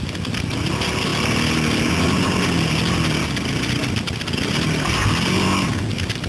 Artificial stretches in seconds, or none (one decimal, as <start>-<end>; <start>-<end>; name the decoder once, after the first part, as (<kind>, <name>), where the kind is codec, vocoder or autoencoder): none